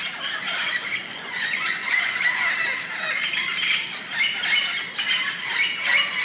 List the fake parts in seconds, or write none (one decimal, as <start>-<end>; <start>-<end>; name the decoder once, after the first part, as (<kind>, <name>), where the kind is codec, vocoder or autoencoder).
1.0-2.2 (vocoder, Vocos)